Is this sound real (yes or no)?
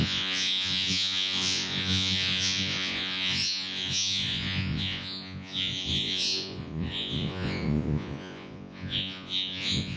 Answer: no